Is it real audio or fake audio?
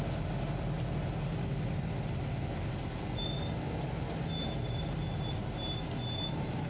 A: real